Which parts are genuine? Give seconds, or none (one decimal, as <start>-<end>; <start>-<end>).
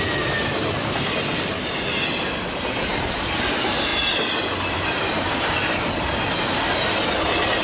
0.0-2.9; 3.5-7.6